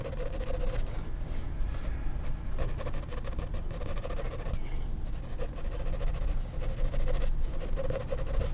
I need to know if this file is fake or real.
real